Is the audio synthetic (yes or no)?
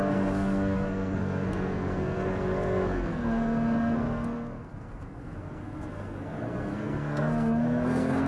yes